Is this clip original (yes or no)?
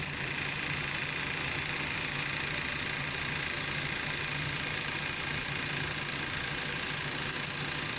yes